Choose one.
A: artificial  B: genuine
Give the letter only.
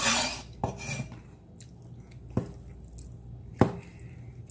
B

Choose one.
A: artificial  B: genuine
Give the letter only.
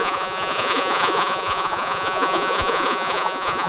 A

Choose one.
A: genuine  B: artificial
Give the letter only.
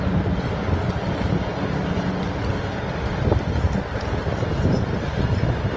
A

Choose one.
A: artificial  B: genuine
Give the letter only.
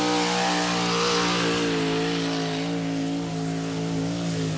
B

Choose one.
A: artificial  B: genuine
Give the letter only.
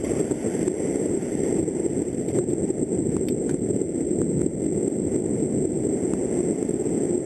B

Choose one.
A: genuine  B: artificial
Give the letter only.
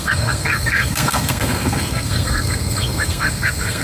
B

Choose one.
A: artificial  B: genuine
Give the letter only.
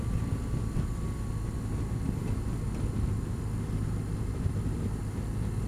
B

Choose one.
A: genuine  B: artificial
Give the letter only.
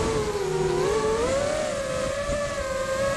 A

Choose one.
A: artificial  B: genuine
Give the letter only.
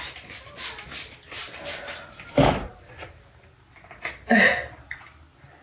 B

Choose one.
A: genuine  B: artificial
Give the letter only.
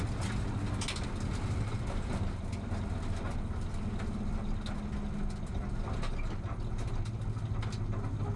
A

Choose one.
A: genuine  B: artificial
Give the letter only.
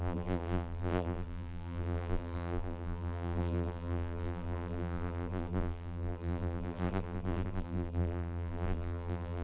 B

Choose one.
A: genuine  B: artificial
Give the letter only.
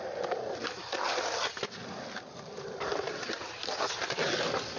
B